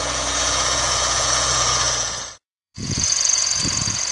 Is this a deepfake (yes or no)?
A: yes